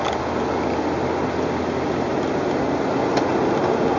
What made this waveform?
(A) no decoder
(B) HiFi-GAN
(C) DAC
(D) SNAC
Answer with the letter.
A